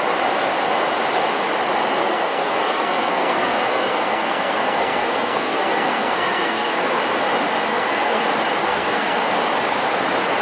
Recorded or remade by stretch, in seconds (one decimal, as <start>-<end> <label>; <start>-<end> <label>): 0.0-2.0 recorded; 2.0-7.0 remade; 7.0-7.7 recorded; 7.7-8.2 remade; 8.2-8.6 recorded; 8.6-9.3 remade; 9.3-10.4 recorded